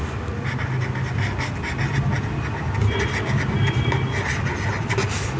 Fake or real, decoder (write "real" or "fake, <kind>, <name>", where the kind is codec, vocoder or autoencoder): real